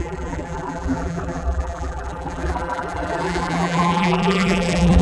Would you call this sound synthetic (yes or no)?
yes